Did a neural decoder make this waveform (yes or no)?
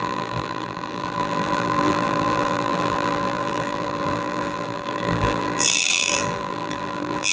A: yes